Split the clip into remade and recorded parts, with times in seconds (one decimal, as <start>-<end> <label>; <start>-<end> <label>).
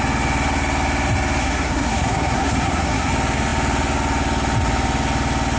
0.0-1.4 recorded; 1.4-3.1 remade; 3.1-5.6 recorded